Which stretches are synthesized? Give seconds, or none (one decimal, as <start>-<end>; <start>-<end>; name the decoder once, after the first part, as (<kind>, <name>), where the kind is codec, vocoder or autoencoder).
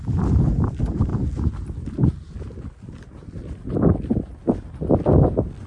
none